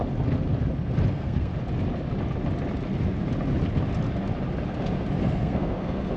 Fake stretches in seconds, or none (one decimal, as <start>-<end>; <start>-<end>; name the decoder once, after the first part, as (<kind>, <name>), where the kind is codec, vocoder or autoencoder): 1.1-1.5 (codec, SNAC); 5.2-6.2